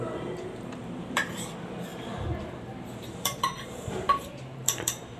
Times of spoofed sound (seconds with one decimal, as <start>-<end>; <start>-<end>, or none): 0.0-1.9; 2.6-5.2